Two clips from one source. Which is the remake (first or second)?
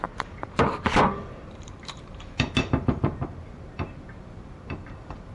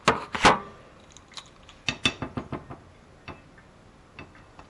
first